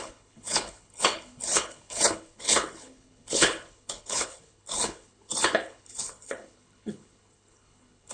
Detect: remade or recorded remade